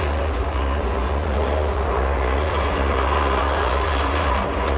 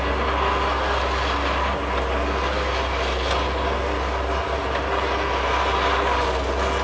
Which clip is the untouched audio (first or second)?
second